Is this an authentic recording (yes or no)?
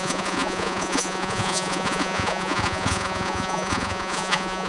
no